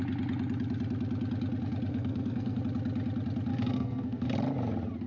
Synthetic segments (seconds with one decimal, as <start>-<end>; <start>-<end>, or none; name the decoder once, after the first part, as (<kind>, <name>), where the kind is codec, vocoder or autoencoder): 1.9-2.6 (codec, SNAC); 3.5-4.3